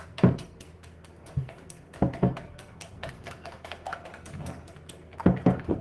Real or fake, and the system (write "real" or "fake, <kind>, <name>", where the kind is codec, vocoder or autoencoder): fake, codec, SNAC